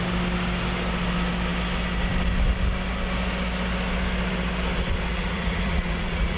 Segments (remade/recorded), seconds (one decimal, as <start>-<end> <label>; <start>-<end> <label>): 0.0-5.1 recorded; 5.1-6.4 remade